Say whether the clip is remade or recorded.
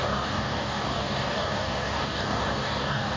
remade